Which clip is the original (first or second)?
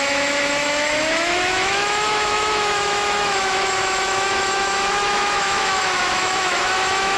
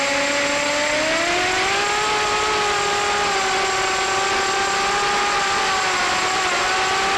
second